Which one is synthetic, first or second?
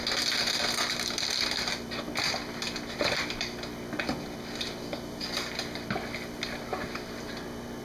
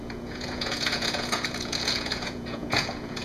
second